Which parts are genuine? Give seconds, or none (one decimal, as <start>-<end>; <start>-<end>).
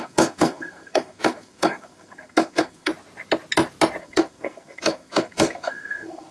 2.9-4.0